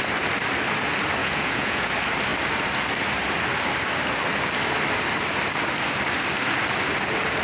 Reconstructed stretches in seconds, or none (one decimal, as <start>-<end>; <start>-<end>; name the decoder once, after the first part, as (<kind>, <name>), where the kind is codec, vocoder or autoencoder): 1.2-1.9 (vocoder, Vocos)